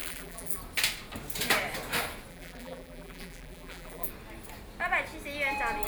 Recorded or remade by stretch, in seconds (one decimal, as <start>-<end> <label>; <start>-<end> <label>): 0.0-0.6 remade; 0.6-2.3 recorded; 2.3-4.1 remade; 4.1-5.9 recorded